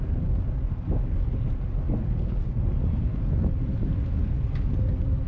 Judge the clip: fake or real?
real